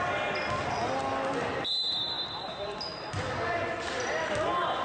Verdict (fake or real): real